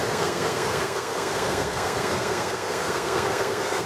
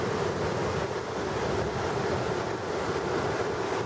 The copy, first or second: first